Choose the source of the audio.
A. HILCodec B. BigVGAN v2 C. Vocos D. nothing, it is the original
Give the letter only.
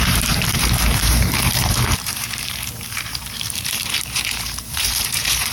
B